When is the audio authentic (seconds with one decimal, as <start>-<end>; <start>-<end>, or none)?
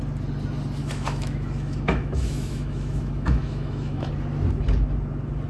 0.0-0.8; 4.1-5.5